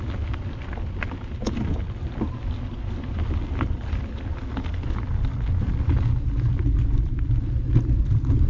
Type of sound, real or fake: real